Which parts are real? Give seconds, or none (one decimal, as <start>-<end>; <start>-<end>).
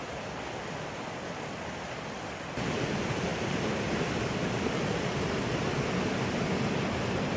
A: 0.0-7.4